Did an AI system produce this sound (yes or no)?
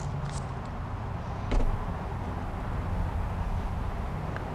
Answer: no